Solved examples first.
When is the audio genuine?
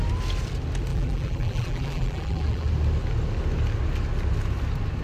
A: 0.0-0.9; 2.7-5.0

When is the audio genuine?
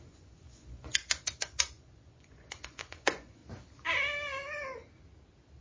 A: 3.4-5.6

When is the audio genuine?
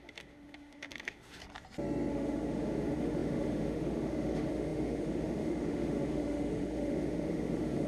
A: 1.4-2.1